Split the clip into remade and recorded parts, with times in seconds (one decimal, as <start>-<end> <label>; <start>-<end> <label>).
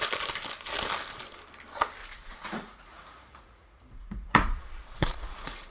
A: 0.0-2.0 recorded; 2.0-5.7 remade